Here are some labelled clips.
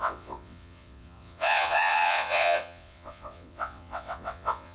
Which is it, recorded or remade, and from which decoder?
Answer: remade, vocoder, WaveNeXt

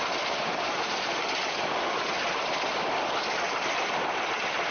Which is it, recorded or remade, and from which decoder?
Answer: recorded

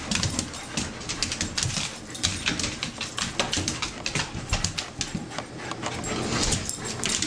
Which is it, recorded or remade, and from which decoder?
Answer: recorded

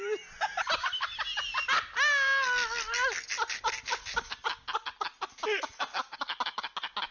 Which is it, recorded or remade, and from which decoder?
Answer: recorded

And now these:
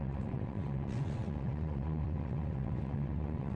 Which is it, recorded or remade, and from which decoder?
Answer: remade, vocoder, WaveNeXt